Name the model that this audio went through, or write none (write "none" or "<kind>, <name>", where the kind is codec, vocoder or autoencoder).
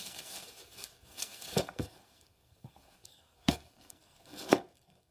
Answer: codec, SNAC